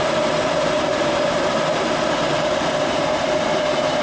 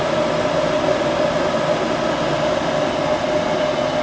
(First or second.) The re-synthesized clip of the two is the first